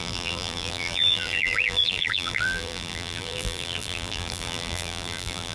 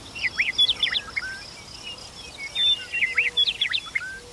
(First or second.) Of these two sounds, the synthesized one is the first